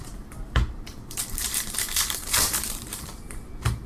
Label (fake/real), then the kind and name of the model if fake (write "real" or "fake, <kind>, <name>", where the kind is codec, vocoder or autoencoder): fake, vocoder, BigVGAN v2